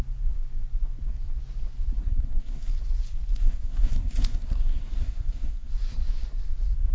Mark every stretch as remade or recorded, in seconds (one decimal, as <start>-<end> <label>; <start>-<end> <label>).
0.0-2.0 recorded; 2.0-2.7 remade; 2.7-3.3 recorded; 3.3-5.7 remade; 5.7-6.9 recorded